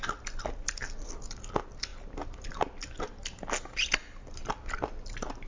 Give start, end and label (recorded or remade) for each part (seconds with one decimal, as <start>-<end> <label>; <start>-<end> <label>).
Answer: 0.0-5.5 recorded